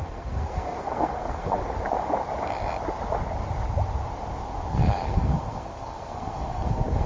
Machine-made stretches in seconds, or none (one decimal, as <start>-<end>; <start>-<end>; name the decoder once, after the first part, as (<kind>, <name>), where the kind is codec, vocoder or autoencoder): 0.0-1.6 (codec, SNAC); 4.7-7.1